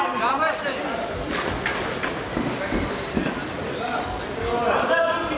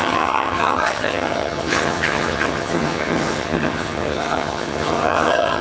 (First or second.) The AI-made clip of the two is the second